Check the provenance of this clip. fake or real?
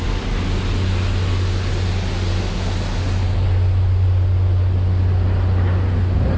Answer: real